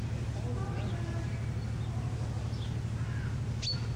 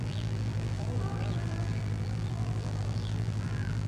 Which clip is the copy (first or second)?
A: second